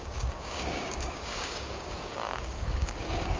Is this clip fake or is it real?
fake